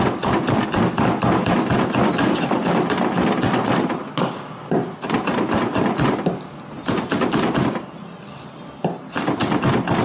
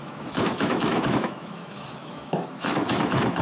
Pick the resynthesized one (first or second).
second